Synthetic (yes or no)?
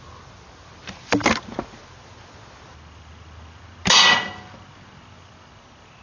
no